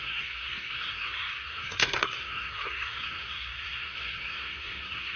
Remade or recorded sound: remade